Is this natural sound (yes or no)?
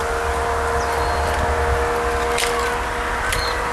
yes